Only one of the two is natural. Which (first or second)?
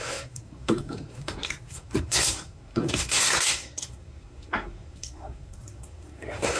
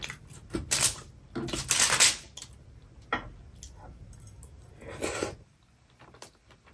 second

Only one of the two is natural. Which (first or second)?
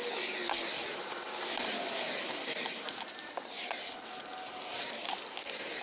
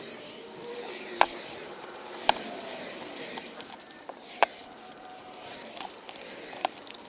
first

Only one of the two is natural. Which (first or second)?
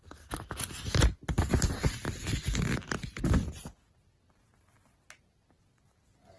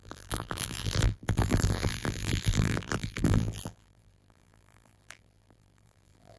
first